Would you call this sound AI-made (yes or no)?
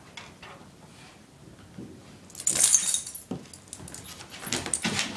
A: no